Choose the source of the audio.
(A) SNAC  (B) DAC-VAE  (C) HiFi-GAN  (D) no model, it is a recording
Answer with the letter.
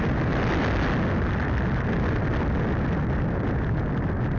D